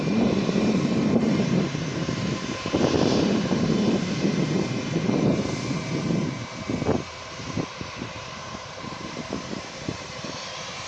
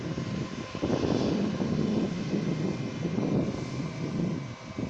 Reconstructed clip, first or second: first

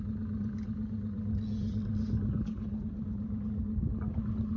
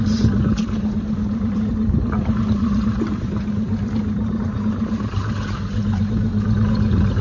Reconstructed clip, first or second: second